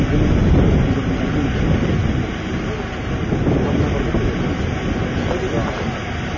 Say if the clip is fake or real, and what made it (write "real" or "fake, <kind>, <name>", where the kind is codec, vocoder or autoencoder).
real